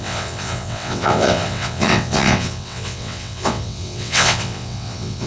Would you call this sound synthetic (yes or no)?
yes